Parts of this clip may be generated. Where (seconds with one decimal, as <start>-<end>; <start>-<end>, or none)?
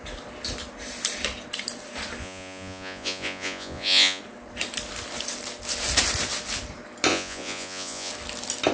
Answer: 2.2-4.2; 7.1-8.1